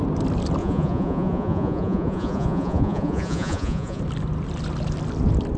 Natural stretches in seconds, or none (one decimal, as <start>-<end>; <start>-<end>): 0.0-0.6; 4.0-5.6